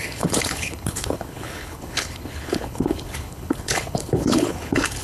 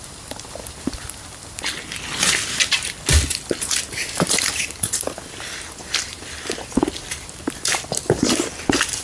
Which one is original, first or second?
second